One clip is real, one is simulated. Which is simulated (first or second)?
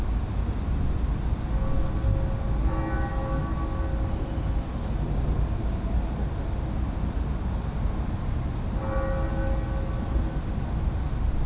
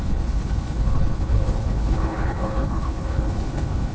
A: second